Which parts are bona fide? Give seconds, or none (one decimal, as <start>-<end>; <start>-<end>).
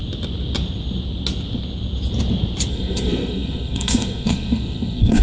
0.0-2.7